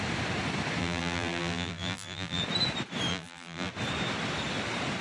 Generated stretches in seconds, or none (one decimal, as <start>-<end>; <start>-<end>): 0.8-2.4; 3.1-3.7